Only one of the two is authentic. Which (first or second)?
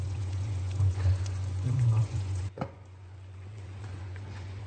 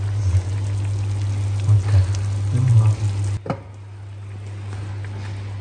second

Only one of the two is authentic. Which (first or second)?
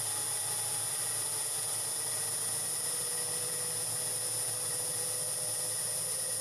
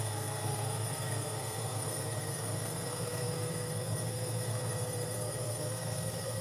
first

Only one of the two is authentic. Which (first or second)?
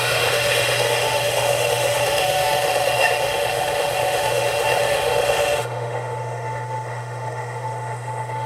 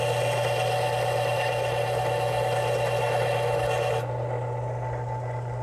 second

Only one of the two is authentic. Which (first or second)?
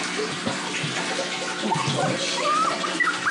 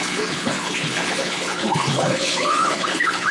first